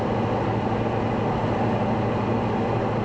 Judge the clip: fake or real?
real